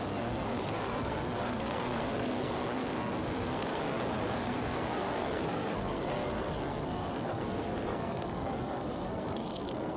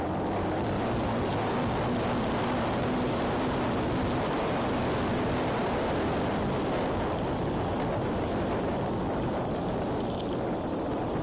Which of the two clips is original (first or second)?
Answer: second